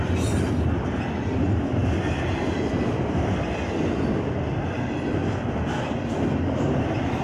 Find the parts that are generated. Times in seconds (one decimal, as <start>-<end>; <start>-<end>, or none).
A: none